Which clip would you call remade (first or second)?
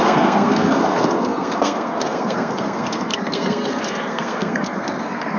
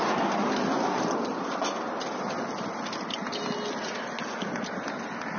first